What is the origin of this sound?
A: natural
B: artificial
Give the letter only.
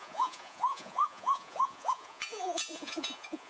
B